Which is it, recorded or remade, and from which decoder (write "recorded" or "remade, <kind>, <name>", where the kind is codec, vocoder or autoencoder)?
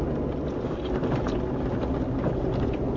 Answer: recorded